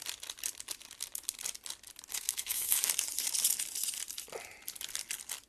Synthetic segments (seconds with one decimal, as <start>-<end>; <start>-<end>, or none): 2.1-2.9